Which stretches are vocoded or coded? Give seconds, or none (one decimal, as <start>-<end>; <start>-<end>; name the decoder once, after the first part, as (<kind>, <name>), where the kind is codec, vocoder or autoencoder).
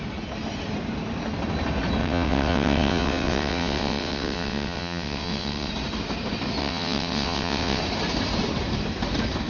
2.0-5.7 (vocoder, WaveNeXt); 6.6-7.8